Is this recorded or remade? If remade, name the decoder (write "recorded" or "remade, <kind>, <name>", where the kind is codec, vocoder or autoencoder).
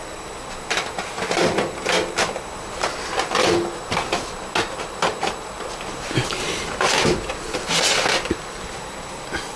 recorded